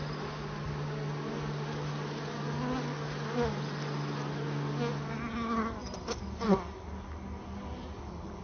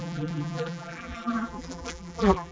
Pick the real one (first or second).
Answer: first